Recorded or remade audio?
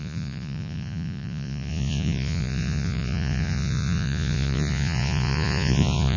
remade